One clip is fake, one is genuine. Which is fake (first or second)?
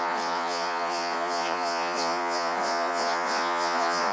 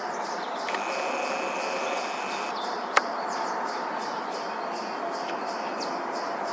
first